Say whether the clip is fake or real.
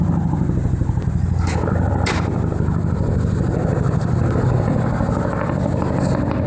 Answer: fake